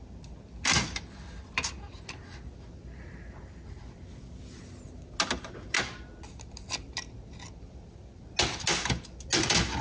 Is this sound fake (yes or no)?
no